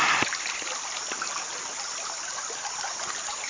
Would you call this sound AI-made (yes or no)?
no